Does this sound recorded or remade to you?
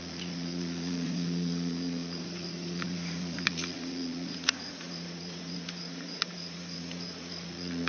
remade